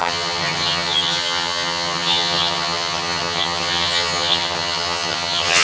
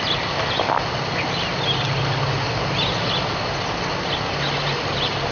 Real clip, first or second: second